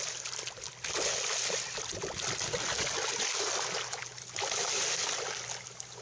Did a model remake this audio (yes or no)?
no